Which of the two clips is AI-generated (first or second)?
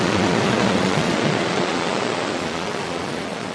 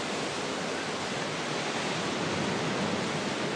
first